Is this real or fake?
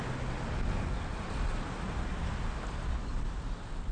real